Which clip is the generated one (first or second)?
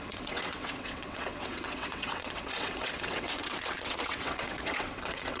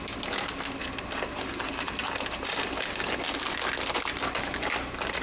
first